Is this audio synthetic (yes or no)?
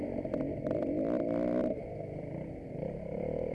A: yes